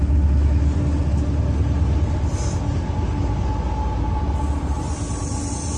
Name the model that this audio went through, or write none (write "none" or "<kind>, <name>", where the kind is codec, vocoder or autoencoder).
none